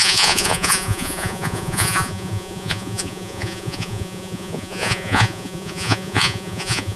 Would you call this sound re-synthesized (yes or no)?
yes